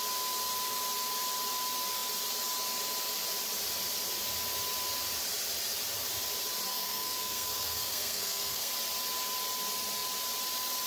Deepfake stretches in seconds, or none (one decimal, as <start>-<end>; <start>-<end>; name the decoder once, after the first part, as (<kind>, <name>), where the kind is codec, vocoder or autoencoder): 6.7-8.7 (codec, SNAC)